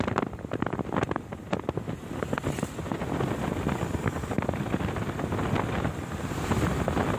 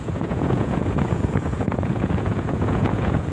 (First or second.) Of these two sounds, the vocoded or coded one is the second